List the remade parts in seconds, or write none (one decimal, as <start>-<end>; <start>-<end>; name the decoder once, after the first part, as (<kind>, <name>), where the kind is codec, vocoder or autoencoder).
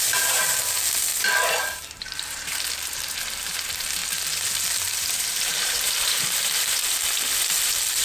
0.0-1.1 (vocoder, BigVGAN v2); 1.6-6.8; 7.4-8.0